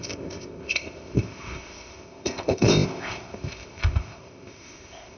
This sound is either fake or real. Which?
fake